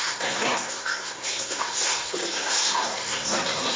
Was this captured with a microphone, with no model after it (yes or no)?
no